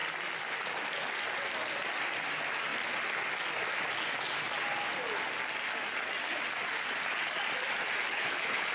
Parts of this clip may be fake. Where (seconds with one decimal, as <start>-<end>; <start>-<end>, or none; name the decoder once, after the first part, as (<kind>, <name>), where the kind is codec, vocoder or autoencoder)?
8.0-8.7 (codec, HILCodec)